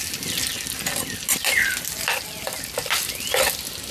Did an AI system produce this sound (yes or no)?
no